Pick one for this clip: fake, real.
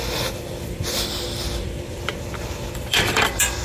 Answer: fake